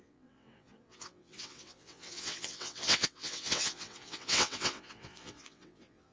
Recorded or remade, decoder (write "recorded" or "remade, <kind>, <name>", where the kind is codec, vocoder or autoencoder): remade, vocoder, WaveNeXt